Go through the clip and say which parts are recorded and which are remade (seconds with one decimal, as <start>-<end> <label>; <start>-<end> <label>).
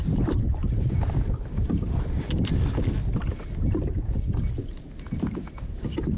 0.0-6.2 recorded